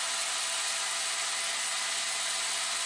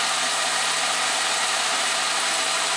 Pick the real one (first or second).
first